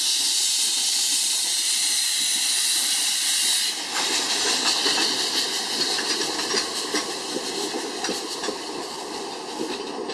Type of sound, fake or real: real